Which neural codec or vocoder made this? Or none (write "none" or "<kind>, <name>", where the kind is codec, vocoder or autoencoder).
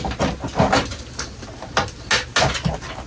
none